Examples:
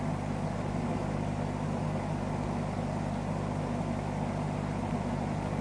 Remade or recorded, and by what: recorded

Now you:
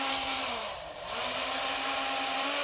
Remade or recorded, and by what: recorded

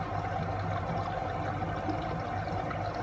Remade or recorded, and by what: recorded